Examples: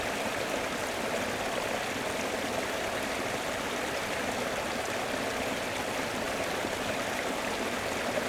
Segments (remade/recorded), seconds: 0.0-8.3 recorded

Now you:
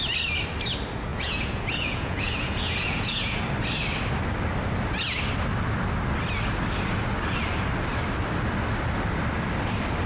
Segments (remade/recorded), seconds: 0.0-1.1 recorded; 1.1-3.4 remade; 3.4-10.1 recorded

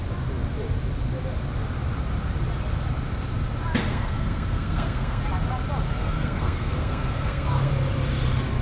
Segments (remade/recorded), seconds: 0.0-3.9 recorded; 3.9-5.2 remade; 5.2-6.0 recorded; 6.0-7.7 remade; 7.7-8.6 recorded

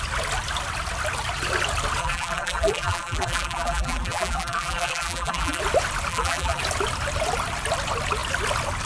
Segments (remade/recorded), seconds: 0.0-2.0 recorded; 2.0-5.6 remade; 5.6-6.1 recorded; 6.1-6.6 remade; 6.6-8.9 recorded

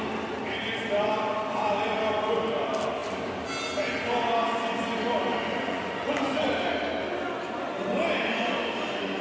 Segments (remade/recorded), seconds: 0.0-5.3 recorded; 5.3-6.5 remade; 6.5-9.2 recorded

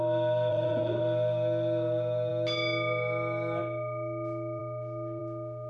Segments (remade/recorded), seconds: 0.0-0.5 recorded; 0.5-1.0 remade; 1.0-5.7 recorded

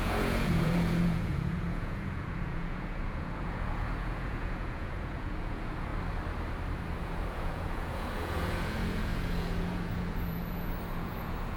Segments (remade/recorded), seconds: 0.0-5.9 remade; 5.9-7.0 recorded; 7.0-11.6 remade

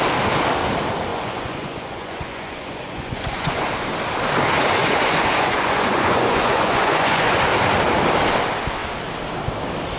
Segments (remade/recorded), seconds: 0.0-1.1 recorded; 1.1-3.7 remade; 3.7-4.8 recorded; 4.8-7.4 remade; 7.4-10.0 recorded